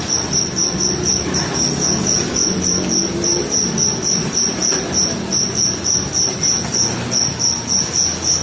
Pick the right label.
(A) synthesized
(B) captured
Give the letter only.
B